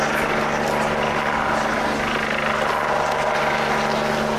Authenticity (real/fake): real